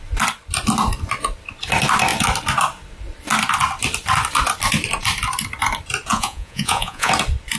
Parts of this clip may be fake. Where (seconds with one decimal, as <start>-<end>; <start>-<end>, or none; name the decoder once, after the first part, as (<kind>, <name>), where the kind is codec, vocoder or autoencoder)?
6.1-7.1 (vocoder, Vocos)